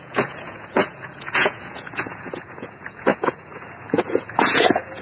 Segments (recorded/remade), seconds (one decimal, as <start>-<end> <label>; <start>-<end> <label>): 0.0-5.0 remade